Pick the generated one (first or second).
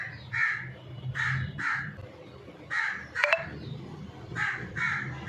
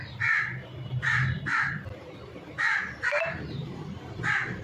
second